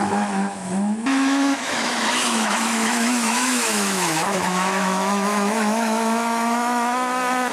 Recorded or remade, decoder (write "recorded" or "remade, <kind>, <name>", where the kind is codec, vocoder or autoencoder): remade, autoencoder, DAC-VAE